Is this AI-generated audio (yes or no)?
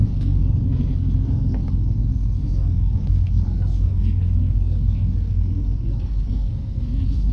yes